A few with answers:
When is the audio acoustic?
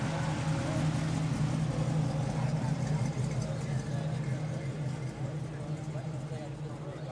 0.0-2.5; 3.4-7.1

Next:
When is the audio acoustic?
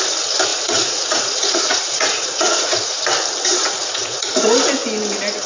0.0-0.5; 3.0-3.5; 4.3-5.5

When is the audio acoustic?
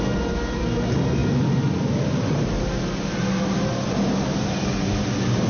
0.0-5.5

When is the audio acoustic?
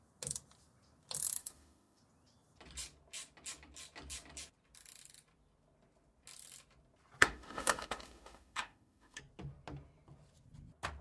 0.0-1.4; 2.0-7.2; 9.2-11.0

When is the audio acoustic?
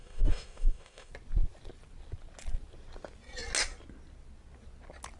1.1-5.2